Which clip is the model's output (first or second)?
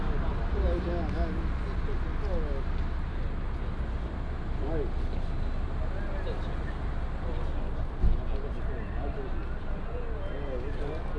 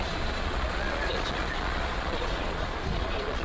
second